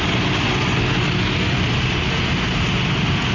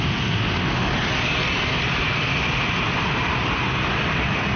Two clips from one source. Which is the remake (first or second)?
second